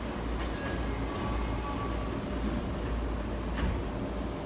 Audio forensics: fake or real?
real